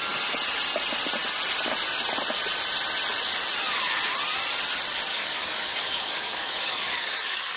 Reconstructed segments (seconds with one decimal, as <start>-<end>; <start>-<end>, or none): 5.1-7.6